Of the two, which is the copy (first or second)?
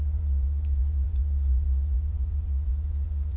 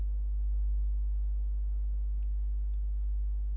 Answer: first